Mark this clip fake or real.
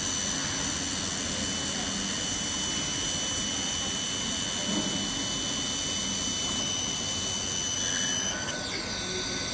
real